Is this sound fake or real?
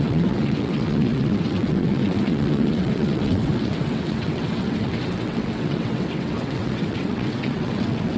fake